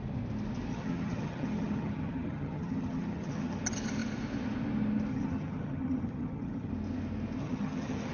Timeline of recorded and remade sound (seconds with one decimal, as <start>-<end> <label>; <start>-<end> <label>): 0.0-0.7 recorded; 0.7-3.6 remade; 3.6-5.1 recorded; 5.1-6.7 remade; 6.7-7.4 recorded; 7.4-8.1 remade